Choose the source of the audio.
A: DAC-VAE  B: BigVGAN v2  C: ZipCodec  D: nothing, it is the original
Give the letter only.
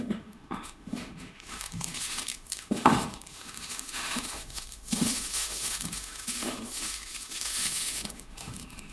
A